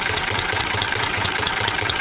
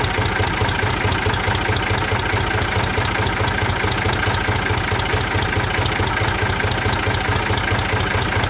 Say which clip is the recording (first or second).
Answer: second